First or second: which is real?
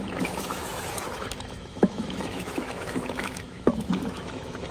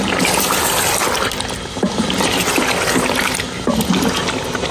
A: second